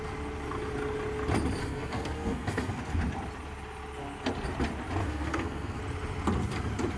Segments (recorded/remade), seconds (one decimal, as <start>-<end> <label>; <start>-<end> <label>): 0.0-1.6 recorded; 1.6-2.8 remade; 2.8-5.0 recorded; 5.0-5.8 remade; 5.8-7.0 recorded

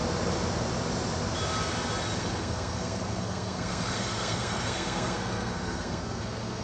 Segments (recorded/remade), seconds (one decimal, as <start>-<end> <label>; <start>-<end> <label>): 0.0-2.2 recorded; 2.2-6.6 remade

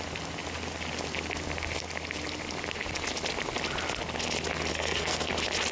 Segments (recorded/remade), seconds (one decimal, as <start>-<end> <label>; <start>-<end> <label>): 0.0-4.7 recorded; 4.7-5.3 remade; 5.3-5.7 recorded

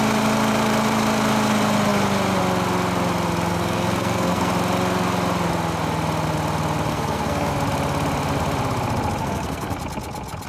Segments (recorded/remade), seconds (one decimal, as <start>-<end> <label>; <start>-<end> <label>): 0.0-3.5 recorded; 3.5-4.5 remade; 4.5-6.9 recorded; 6.9-7.5 remade; 7.5-9.2 recorded; 9.2-9.8 remade; 9.8-10.5 recorded

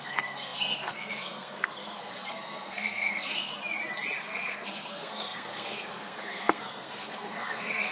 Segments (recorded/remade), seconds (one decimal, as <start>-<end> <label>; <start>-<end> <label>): 0.0-3.5 remade; 3.5-4.2 recorded; 4.2-7.9 remade

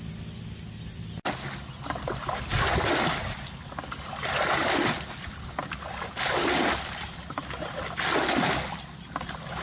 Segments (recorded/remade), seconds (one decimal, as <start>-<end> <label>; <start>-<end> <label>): 0.0-9.6 recorded

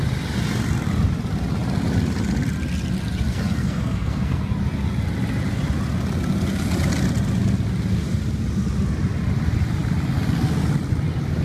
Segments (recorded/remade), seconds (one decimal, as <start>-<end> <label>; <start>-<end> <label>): 0.0-3.3 recorded; 3.3-4.4 remade; 4.4-11.4 recorded

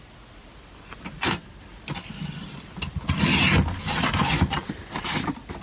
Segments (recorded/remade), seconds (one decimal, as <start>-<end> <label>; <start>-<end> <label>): 0.0-5.6 recorded